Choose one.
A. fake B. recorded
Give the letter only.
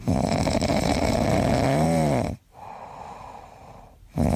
A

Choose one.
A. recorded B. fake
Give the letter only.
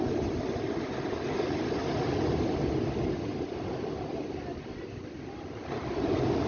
A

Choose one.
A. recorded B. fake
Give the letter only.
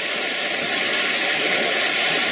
A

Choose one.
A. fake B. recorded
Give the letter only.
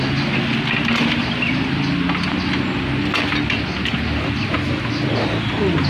B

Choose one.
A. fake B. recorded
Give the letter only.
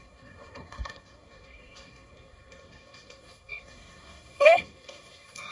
A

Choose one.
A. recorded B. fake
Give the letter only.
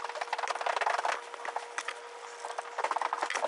A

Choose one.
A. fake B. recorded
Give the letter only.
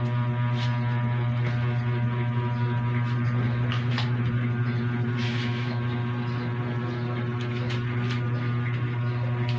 B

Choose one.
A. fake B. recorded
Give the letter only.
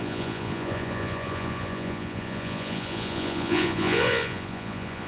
A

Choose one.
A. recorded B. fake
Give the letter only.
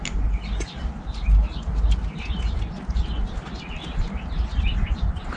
A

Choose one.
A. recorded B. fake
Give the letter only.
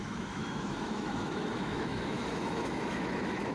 B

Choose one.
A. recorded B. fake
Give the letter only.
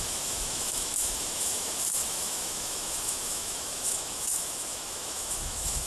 B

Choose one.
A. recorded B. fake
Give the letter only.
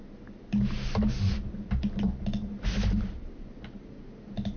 A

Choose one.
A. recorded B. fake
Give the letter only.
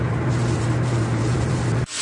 B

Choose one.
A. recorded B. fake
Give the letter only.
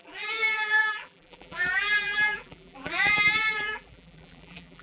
B